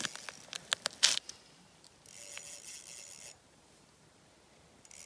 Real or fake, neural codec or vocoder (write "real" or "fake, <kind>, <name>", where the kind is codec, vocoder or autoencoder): real